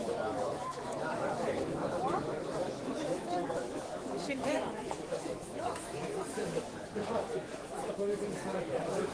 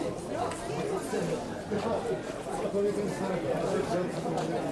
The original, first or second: second